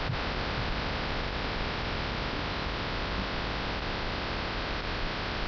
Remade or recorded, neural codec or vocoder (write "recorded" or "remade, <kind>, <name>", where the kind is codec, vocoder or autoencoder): recorded